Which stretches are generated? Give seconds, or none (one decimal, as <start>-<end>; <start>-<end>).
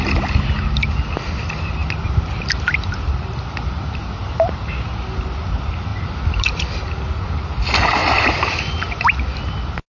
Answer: 5.9-6.6; 8.0-8.6